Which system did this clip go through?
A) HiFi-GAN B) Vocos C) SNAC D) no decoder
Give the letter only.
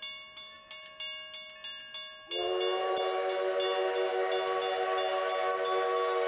D